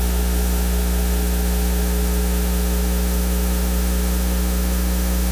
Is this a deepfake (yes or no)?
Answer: yes